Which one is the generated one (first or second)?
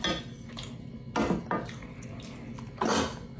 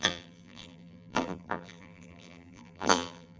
second